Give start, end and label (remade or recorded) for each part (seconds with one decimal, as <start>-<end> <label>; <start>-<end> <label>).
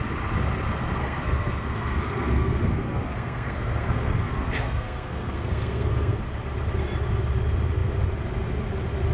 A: 0.0-1.0 recorded; 1.0-6.2 remade; 6.2-9.1 recorded